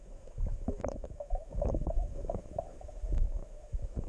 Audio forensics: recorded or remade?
remade